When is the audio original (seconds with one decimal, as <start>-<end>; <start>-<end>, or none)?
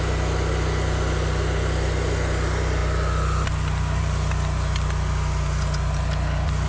0.0-6.7